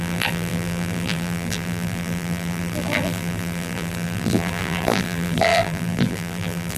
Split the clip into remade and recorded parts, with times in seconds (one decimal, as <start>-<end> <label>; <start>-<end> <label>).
0.0-6.8 remade